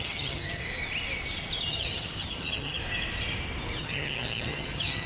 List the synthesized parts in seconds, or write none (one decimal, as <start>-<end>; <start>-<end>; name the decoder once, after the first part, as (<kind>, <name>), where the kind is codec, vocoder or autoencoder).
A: 0.0-0.7 (vocoder, HiFi-GAN); 1.7-2.8; 3.8-5.1